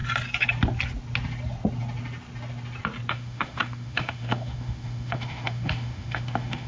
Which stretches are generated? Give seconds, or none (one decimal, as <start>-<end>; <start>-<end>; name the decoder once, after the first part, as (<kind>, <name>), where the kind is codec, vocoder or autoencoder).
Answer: 3.1-6.7 (autoencoder, DAC-VAE)